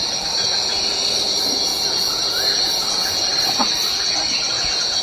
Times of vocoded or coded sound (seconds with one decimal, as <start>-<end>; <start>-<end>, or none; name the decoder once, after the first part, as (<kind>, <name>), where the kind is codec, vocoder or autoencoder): none